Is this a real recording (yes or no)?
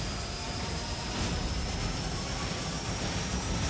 yes